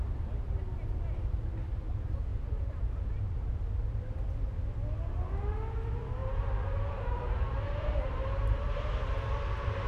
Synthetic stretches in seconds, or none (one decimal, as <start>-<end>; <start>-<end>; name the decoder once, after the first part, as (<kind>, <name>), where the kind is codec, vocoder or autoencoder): 2.3-4.0 (vocoder, BigVGAN v2); 6.2-9.9